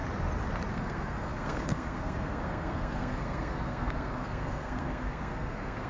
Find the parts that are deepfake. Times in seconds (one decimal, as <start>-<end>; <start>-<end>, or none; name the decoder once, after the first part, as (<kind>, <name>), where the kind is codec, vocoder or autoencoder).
0.7-5.9 (codec, SNAC)